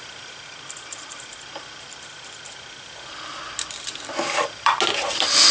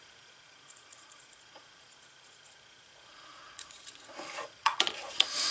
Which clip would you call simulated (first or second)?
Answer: second